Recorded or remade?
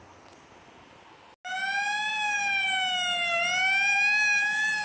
recorded